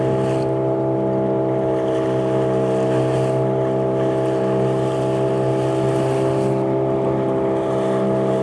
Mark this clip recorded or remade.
recorded